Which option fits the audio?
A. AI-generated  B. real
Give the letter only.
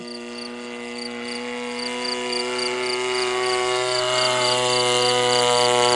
B